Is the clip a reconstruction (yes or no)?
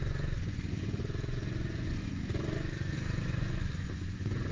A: yes